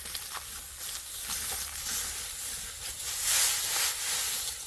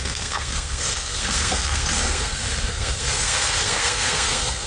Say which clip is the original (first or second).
first